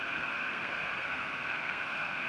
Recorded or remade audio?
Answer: remade